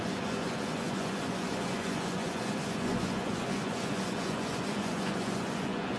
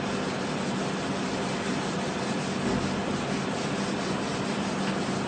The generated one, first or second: first